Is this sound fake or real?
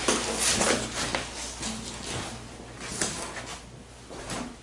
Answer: real